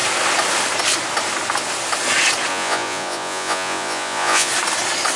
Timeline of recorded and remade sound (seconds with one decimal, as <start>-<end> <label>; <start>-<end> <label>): 0.0-2.5 recorded; 2.5-4.5 remade; 4.5-5.2 recorded

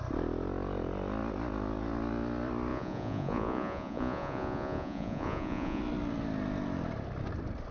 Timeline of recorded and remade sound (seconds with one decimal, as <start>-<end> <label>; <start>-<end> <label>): 0.0-2.7 recorded; 2.7-5.8 remade; 5.8-7.7 recorded

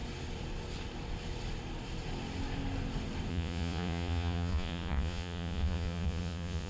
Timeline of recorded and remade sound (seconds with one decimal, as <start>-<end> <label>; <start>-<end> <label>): 0.0-3.3 recorded; 3.3-6.7 remade

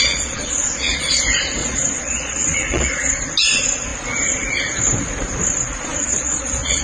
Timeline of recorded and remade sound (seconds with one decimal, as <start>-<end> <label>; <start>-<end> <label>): 0.0-1.2 remade; 1.2-1.6 recorded; 1.6-3.1 remade; 3.1-6.0 recorded; 6.0-6.8 remade

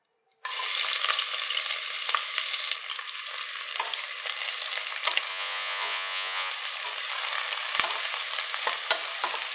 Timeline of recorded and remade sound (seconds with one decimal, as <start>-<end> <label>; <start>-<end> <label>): 0.0-5.3 recorded; 5.3-6.5 remade; 6.5-9.5 recorded